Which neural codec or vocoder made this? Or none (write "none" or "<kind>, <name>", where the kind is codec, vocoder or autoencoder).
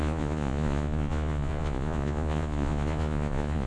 vocoder, Vocos